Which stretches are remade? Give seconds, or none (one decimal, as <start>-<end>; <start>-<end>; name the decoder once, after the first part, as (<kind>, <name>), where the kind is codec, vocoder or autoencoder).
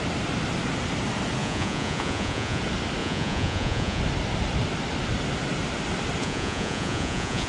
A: 1.4-2.6 (vocoder, Vocos); 3.0-4.0; 6.2-7.5